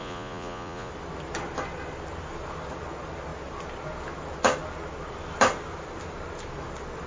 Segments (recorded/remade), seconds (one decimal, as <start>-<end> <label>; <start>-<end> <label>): 0.0-0.9 remade; 0.9-7.1 recorded